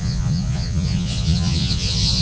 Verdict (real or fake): fake